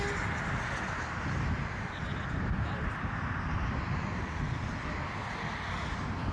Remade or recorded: recorded